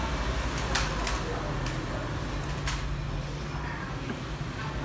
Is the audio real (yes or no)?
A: yes